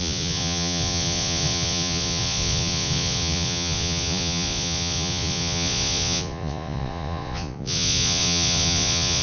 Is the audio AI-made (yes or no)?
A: yes